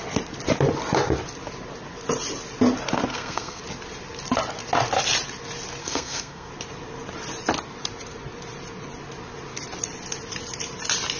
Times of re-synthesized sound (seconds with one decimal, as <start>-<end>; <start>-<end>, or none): 3.1-3.6; 5.8-6.5